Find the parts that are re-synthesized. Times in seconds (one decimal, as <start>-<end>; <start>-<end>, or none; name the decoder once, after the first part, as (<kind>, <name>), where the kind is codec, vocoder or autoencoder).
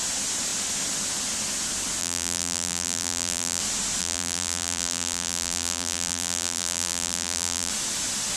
2.0-3.6 (vocoder, BigVGAN v2); 4.0-7.7